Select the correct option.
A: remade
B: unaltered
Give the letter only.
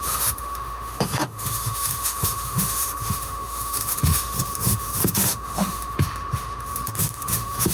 A